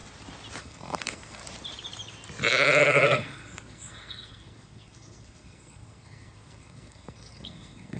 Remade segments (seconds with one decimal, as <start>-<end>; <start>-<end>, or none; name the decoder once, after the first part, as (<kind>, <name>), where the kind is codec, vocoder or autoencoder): 0.6-1.4 (codec, SNAC); 2.8-8.0